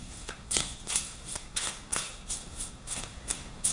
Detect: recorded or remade remade